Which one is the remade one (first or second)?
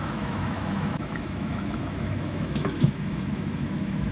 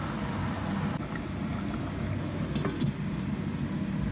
first